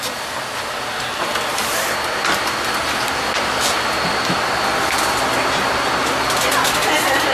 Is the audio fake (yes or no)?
no